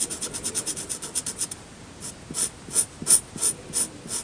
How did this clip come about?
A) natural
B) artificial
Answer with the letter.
A